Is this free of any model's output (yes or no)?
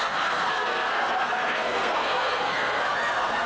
no